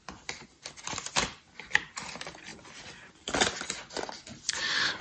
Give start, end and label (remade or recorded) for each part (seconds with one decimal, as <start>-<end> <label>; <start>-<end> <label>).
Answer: 0.0-5.0 recorded